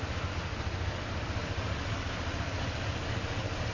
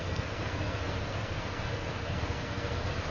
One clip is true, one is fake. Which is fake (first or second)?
second